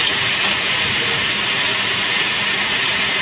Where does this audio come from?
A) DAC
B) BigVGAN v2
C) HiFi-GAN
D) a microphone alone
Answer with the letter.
D